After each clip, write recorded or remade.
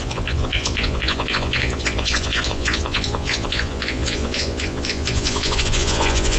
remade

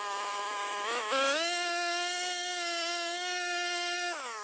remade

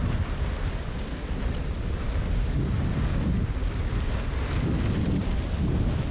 recorded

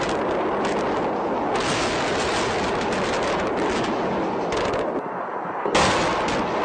recorded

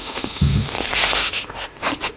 remade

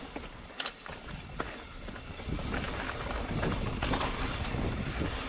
recorded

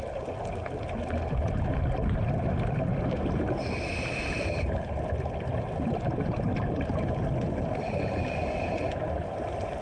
recorded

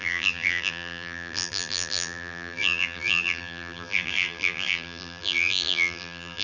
remade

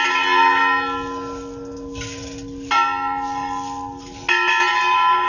recorded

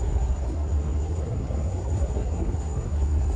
remade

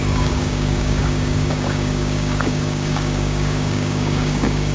remade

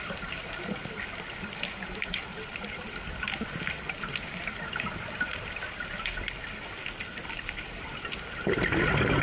recorded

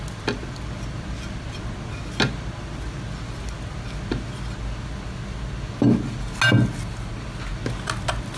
recorded